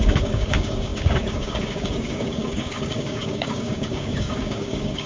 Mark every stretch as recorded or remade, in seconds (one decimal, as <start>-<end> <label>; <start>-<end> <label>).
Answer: 0.0-5.1 remade